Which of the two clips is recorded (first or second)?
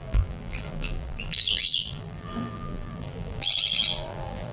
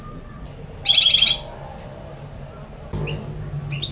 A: second